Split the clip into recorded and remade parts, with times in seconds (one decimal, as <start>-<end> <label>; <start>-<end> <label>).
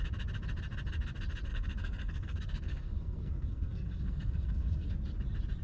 0.0-1.5 recorded; 1.5-4.9 remade; 4.9-5.6 recorded